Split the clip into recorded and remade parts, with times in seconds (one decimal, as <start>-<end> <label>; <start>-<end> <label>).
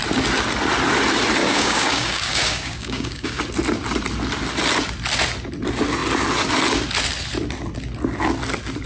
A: 0.0-1.4 recorded; 1.4-3.4 remade; 3.4-8.9 recorded